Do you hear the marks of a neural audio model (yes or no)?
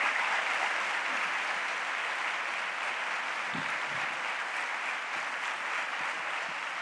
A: no